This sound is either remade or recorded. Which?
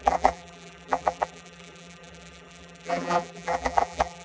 remade